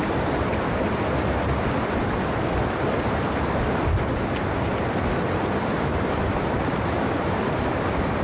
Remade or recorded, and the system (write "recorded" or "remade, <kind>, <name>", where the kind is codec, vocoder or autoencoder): recorded